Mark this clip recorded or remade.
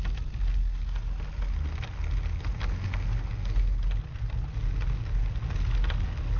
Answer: recorded